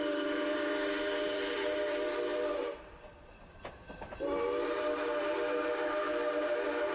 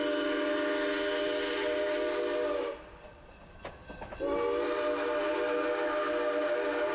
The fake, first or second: first